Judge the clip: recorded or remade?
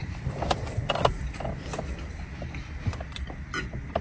recorded